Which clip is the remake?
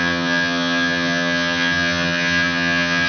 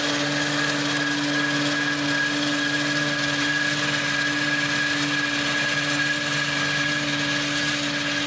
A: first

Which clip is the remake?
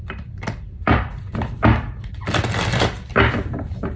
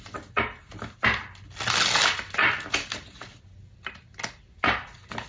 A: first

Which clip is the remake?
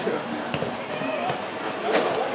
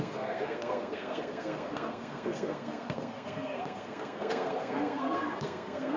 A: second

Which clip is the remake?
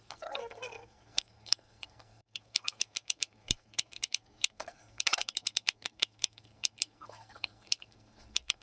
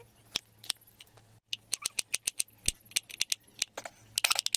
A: first